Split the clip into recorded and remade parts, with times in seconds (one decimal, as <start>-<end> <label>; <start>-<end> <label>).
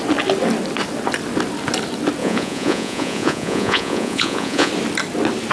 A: 0.0-2.2 recorded; 2.2-4.7 remade; 4.7-5.5 recorded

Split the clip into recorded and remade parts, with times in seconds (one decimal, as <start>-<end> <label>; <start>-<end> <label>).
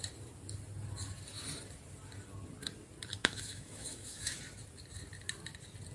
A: 0.0-3.2 recorded; 3.2-4.4 remade; 4.4-5.9 recorded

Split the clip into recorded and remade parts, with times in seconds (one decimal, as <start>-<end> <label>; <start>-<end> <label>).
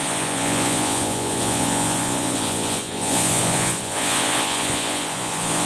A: 0.0-5.7 remade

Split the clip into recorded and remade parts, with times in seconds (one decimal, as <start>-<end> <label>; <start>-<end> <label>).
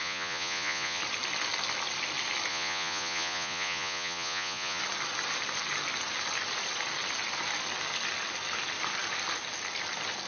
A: 0.0-1.0 remade; 1.0-2.5 recorded; 2.5-4.8 remade; 4.8-10.3 recorded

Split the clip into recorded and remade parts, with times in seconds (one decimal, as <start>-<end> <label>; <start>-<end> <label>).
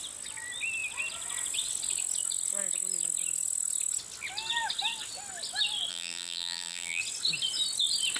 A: 0.0-5.9 recorded; 5.9-7.0 remade; 7.0-8.2 recorded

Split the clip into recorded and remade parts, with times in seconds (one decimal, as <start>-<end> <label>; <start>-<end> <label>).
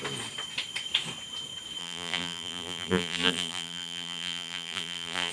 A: 0.0-1.8 recorded; 1.8-5.3 remade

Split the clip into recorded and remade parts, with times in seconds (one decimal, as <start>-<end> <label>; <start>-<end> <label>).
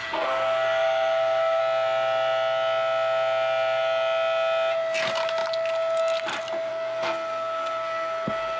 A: 0.0-1.6 remade; 1.6-6.7 recorded; 6.7-8.6 remade